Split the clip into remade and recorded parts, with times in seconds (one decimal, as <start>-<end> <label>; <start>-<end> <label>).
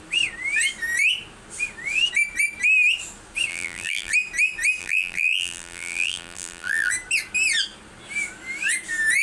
0.0-3.5 recorded; 3.5-4.1 remade; 4.1-4.8 recorded; 4.8-6.9 remade; 6.9-9.2 recorded